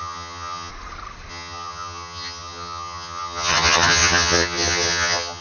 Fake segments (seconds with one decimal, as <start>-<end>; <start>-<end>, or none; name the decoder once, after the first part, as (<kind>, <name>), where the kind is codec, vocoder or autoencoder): 0.0-0.7 (vocoder, HiFi-GAN); 1.3-5.4